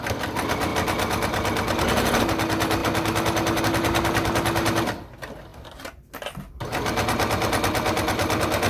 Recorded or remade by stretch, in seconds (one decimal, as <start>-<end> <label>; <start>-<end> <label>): 0.0-8.7 recorded